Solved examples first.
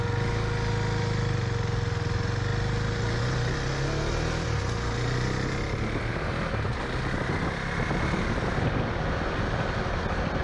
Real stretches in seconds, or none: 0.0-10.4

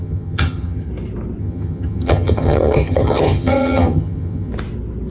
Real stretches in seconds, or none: 0.9-1.4; 4.5-5.1

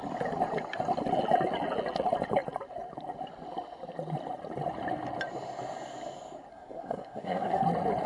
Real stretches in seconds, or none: 0.0-6.5; 7.6-8.1